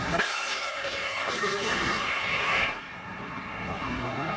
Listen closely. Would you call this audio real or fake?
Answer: fake